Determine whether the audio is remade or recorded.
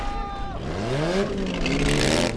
recorded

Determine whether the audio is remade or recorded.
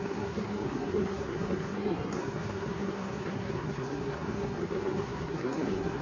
remade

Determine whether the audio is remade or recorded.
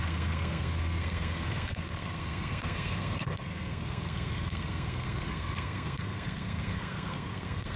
remade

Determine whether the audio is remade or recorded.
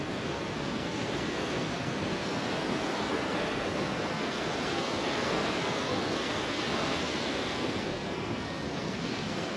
remade